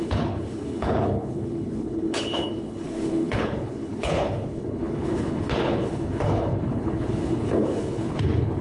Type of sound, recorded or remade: remade